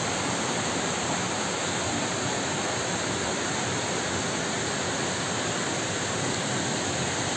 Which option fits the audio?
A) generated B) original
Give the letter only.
A